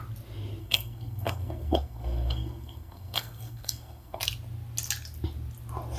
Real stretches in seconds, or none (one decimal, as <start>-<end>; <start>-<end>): 0.0-0.6; 4.2-6.0